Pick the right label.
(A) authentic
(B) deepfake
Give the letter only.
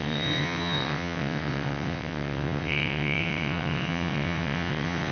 B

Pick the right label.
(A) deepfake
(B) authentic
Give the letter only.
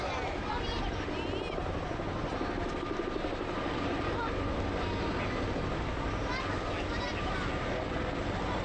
B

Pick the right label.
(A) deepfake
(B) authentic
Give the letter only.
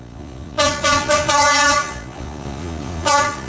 A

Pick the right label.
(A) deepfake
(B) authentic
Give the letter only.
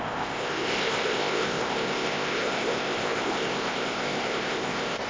A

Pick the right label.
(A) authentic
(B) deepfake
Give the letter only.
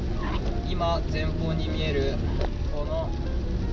A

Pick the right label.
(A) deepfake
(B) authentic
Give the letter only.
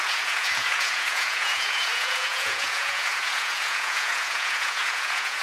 A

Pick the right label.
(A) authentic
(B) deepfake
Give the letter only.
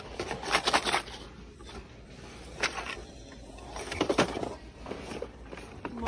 A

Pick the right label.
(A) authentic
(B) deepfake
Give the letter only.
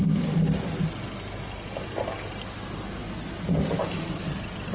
A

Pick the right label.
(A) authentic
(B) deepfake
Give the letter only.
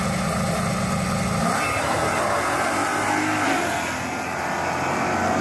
A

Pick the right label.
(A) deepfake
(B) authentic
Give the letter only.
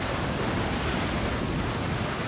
B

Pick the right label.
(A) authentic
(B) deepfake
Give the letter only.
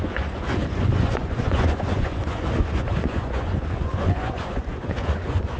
B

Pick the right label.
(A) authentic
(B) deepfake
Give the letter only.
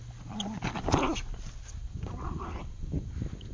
A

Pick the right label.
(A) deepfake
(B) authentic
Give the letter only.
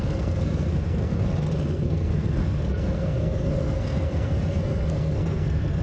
A